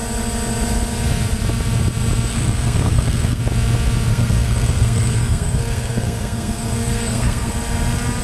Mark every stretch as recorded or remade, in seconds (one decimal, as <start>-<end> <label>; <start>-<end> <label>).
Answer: 0.0-2.3 recorded; 2.3-3.4 remade; 3.4-4.1 recorded; 4.1-7.5 remade; 7.5-8.2 recorded